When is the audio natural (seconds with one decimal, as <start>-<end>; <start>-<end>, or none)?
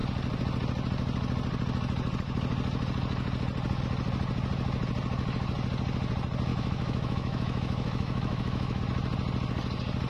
0.0-6.5; 8.8-10.1